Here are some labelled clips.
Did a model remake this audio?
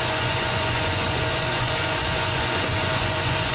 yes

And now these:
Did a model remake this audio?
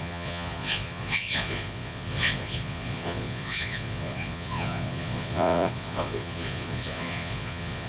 yes